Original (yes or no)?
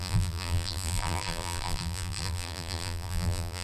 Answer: no